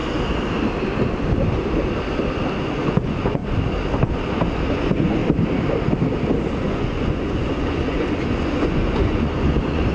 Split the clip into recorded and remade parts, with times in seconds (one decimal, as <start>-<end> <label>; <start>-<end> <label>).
0.0-2.6 recorded; 2.6-3.4 remade; 3.4-4.7 recorded; 4.7-5.2 remade; 5.2-6.5 recorded; 6.5-9.9 remade